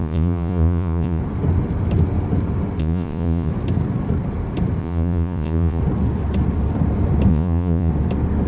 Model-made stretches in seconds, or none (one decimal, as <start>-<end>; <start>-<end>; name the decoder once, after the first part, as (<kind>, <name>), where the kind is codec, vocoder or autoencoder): 0.0-1.2 (vocoder, Vocos); 2.8-3.5; 4.8-5.8; 7.3-7.9